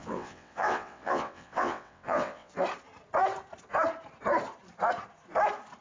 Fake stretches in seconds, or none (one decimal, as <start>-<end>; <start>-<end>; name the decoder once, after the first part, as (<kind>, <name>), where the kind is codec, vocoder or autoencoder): 0.0-2.5 (vocoder, WaveNeXt)